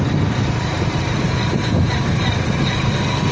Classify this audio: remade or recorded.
remade